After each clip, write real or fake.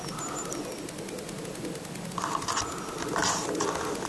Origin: real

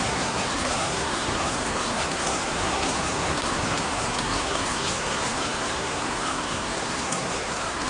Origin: fake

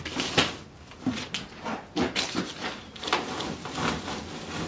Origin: real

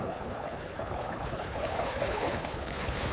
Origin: fake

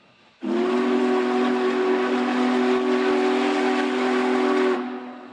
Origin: real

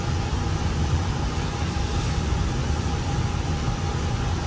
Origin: fake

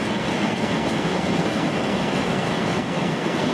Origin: fake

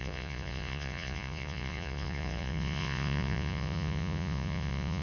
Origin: fake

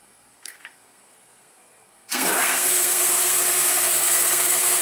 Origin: fake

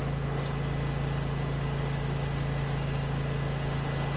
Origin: real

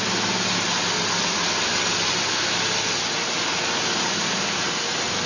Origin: real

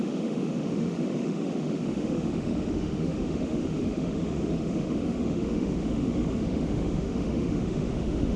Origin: fake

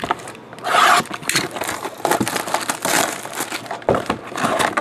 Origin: real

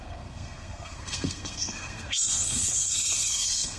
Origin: fake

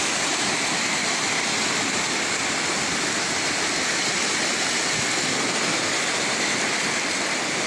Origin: real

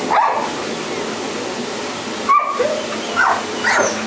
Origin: real